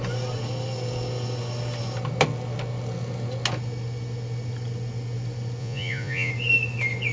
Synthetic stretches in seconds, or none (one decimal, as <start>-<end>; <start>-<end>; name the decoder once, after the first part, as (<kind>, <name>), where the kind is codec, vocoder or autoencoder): 5.6-6.3 (vocoder, Vocos)